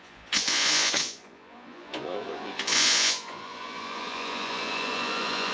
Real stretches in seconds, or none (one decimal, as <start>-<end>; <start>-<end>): none